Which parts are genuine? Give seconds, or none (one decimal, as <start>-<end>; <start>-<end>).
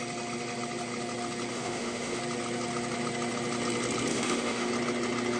0.0-1.5; 2.2-4.1; 4.7-5.4